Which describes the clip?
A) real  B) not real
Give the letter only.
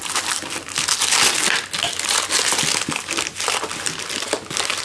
A